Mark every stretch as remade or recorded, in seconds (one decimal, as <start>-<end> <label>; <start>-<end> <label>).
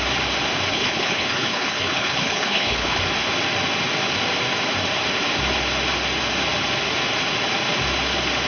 0.0-0.7 recorded; 0.7-3.0 remade; 3.0-8.5 recorded